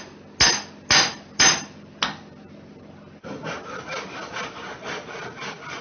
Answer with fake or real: real